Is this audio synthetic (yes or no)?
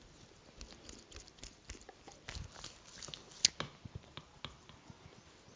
no